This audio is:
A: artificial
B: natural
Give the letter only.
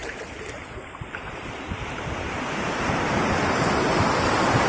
B